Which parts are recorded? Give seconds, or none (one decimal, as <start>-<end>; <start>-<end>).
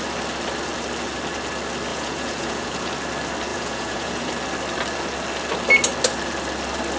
0.0-1.9; 2.9-3.5; 4.3-7.0